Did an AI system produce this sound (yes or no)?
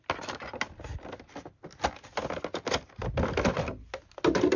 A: no